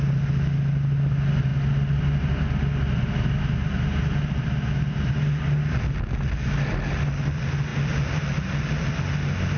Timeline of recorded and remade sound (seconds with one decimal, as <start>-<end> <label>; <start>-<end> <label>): 0.0-9.6 recorded